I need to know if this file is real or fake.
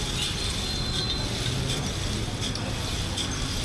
real